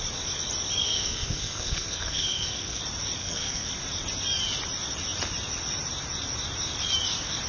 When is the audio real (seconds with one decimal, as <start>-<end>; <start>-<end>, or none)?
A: 0.0-0.8; 2.8-3.2; 3.7-7.5